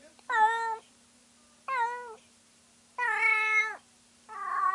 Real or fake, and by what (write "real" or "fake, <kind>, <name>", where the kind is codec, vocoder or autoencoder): real